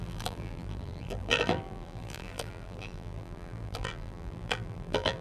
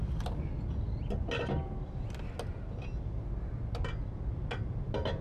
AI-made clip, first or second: first